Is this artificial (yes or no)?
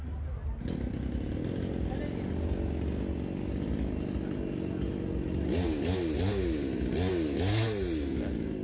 no